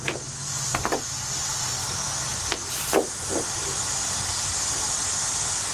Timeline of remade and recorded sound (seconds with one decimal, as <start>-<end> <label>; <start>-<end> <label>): 0.0-1.8 recorded; 1.8-2.4 remade; 2.4-5.7 recorded